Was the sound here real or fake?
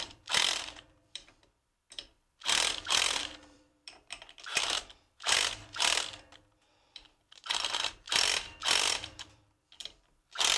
fake